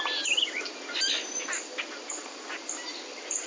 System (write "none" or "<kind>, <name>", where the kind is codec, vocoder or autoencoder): none